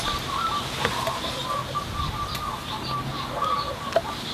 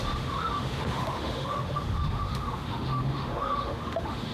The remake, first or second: second